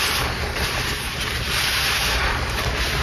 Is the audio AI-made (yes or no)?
yes